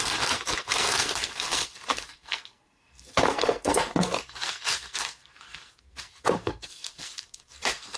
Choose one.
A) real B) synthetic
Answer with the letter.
B